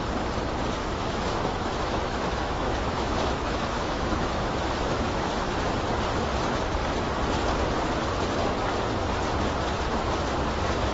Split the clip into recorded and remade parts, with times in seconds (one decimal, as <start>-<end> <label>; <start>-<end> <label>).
0.0-0.8 recorded; 0.8-5.5 remade; 5.5-10.9 recorded